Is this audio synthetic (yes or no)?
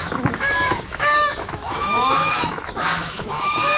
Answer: yes